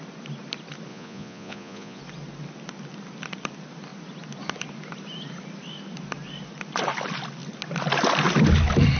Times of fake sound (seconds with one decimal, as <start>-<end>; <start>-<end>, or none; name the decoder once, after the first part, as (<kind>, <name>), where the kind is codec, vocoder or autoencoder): 0.9-2.0 (vocoder, Vocos)